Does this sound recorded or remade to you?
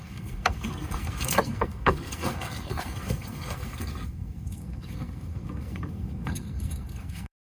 remade